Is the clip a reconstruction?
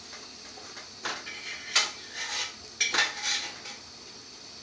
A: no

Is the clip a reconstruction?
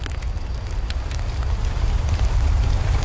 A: no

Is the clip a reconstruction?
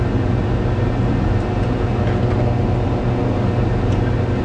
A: no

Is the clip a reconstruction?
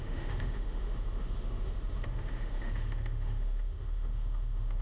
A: yes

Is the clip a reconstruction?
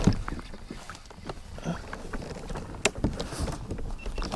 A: no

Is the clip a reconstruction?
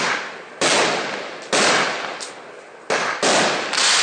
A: no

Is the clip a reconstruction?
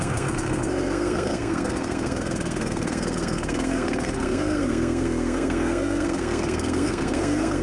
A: yes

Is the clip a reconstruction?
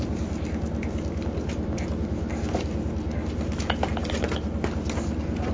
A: no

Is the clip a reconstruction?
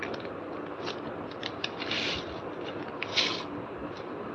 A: no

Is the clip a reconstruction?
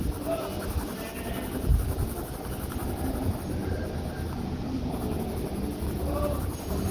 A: no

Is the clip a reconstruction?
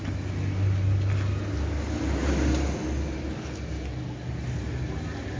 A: no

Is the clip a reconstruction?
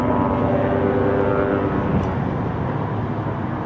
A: no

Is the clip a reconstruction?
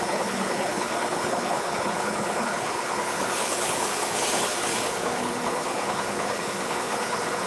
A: yes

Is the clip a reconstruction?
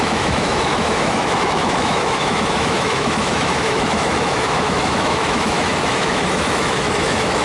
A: yes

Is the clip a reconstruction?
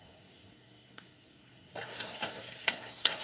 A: yes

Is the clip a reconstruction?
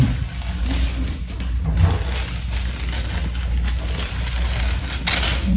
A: no